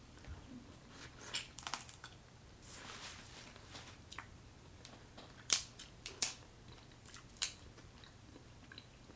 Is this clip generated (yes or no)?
yes